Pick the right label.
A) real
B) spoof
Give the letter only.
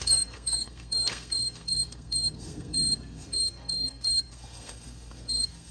B